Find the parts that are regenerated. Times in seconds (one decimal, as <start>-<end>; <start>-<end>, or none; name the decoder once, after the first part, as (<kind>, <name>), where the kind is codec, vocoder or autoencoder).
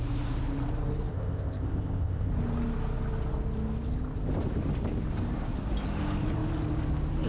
1.1-2.3 (codec, ZipCodec)